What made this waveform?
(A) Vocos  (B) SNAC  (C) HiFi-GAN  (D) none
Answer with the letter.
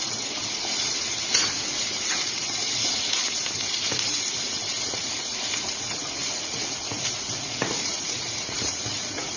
A